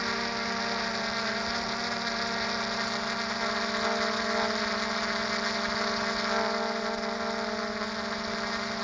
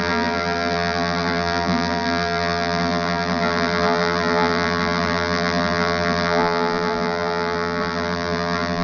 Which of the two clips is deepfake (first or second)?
second